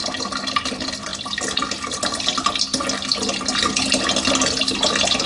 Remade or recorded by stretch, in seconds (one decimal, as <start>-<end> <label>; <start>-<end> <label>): 0.0-5.3 recorded